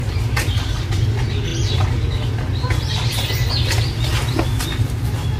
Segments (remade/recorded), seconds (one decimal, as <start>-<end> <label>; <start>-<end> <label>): 0.0-5.4 recorded